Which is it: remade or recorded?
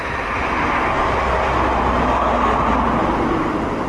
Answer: recorded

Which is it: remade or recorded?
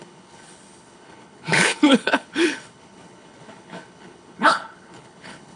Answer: remade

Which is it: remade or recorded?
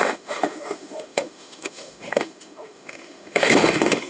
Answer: remade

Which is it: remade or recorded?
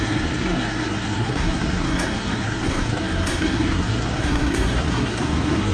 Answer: remade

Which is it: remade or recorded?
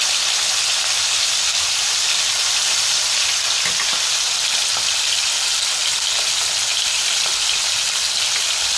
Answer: recorded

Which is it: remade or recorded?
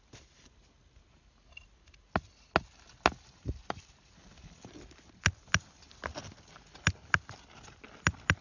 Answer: recorded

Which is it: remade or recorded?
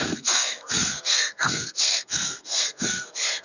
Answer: remade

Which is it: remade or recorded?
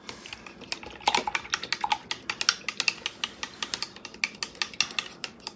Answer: recorded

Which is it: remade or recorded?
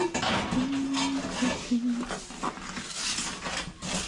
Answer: recorded